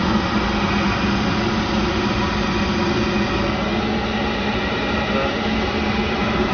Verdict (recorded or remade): recorded